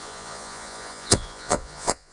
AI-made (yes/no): yes